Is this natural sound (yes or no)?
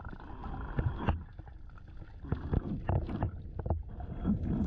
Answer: yes